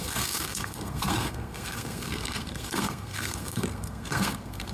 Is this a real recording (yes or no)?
no